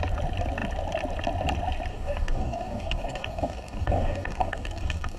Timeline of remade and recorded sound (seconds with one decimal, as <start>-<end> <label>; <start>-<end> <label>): 0.0-1.9 recorded; 1.9-5.2 remade